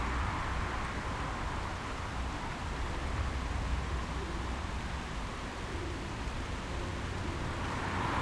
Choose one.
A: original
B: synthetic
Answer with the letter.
A